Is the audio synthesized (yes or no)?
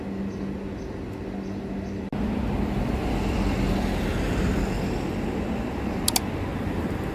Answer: no